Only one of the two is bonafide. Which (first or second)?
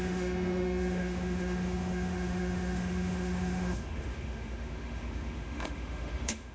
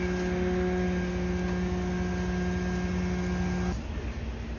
second